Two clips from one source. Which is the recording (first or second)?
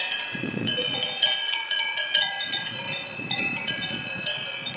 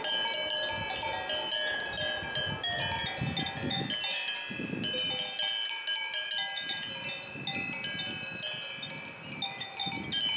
second